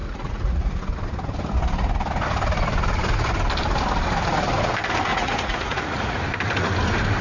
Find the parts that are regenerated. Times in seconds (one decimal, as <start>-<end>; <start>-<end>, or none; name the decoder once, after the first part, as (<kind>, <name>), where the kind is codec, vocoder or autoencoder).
0.0-0.8 (vocoder, Vocos); 5.1-6.2